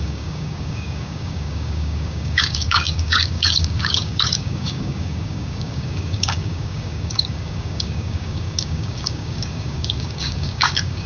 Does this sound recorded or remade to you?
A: remade